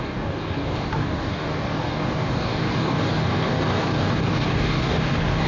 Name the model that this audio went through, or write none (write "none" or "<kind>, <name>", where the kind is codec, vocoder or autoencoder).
codec, DAC